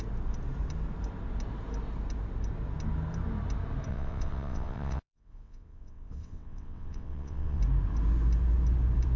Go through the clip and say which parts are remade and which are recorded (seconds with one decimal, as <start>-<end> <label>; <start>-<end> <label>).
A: 0.0-3.9 recorded; 3.9-7.6 remade; 7.6-9.2 recorded

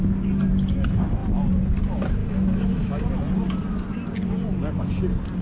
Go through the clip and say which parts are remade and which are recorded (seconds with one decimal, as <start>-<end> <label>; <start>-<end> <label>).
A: 0.0-2.2 recorded; 2.2-3.0 remade; 3.0-5.4 recorded

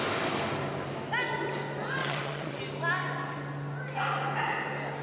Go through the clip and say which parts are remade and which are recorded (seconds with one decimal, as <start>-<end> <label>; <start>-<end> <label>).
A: 0.0-2.0 recorded; 2.0-2.6 remade; 2.6-5.0 recorded

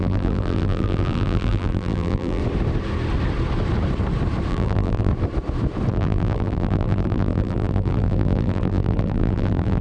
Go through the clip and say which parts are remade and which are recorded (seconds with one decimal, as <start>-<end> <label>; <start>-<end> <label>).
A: 0.0-2.4 remade; 2.4-4.5 recorded; 4.5-5.1 remade; 5.1-5.9 recorded; 5.9-9.8 remade